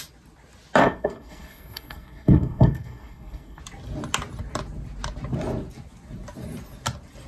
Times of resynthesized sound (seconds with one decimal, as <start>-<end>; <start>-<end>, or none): 0.8-3.6